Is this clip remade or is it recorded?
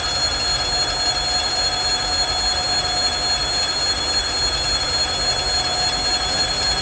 recorded